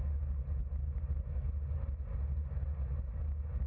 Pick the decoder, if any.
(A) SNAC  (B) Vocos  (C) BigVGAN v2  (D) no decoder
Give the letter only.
D